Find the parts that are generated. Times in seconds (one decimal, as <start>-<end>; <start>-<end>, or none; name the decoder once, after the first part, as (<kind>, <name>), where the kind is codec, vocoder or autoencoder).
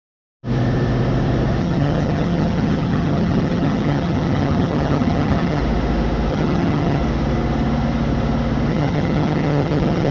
1.6-5.6 (vocoder, HiFi-GAN); 6.3-7.0; 8.7-10.1